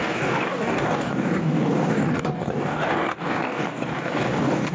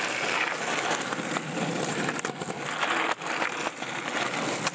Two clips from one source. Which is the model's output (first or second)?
first